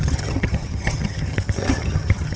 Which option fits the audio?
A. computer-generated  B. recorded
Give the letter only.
A